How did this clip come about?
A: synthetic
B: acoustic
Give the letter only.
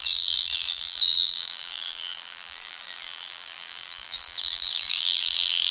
A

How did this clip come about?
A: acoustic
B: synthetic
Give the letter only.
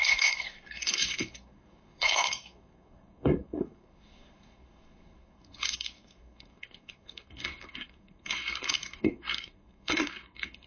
B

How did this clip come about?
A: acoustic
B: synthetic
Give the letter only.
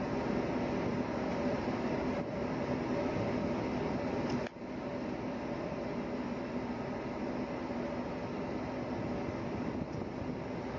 A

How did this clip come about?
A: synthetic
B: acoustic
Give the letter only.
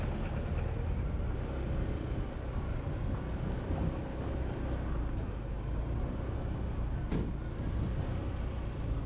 B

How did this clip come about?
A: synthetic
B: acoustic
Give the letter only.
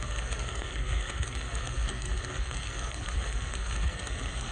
A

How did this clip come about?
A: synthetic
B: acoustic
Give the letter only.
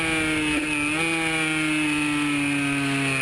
B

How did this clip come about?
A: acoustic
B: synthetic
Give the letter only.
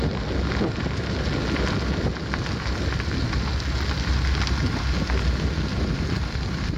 A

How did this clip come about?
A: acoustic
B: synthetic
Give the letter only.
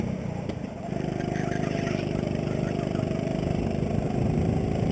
B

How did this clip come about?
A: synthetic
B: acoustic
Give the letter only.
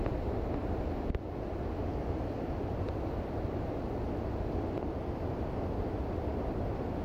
B